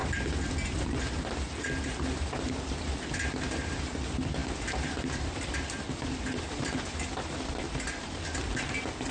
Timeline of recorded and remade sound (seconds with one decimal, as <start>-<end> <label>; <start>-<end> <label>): 0.0-9.1 recorded